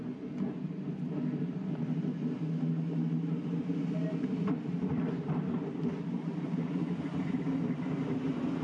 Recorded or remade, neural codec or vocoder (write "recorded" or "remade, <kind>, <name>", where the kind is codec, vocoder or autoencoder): recorded